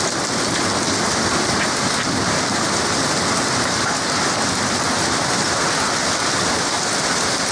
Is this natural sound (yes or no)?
no